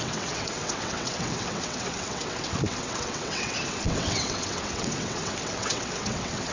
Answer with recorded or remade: remade